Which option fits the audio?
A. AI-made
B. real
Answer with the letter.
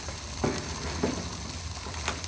B